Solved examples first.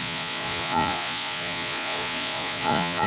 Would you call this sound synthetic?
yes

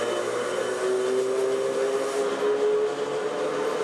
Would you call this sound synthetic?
no